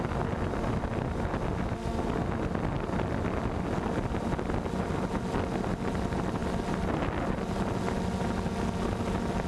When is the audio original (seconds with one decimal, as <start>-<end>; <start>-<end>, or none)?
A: 0.0-9.5